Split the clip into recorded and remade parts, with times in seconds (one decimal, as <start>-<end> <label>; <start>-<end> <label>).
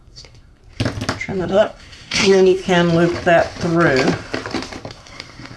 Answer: 0.0-0.6 remade; 0.6-1.4 recorded; 1.4-2.6 remade; 2.6-4.9 recorded; 4.9-5.6 remade